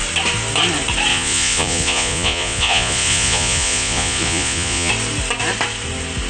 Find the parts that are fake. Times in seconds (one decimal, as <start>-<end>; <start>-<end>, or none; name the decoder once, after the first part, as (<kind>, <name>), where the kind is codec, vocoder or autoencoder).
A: 1.1-4.9 (vocoder, Vocos)